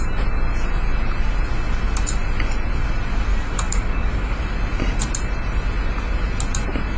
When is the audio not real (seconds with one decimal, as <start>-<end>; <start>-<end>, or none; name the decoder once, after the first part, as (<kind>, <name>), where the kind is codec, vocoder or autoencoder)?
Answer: 3.3-4.4 (codec, DAC)